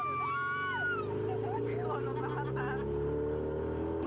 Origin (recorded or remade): recorded